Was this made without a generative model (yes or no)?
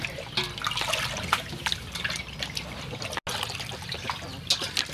yes